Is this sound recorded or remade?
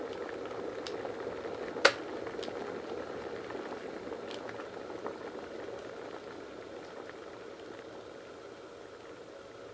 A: recorded